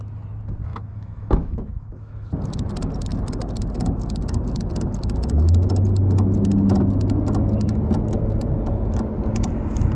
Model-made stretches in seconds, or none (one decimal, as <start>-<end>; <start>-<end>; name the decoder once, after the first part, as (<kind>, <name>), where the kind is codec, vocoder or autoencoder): 0.7-2.3 (autoencoder, DAC-VAE)